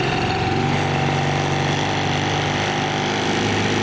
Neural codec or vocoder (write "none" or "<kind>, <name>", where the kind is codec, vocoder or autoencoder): none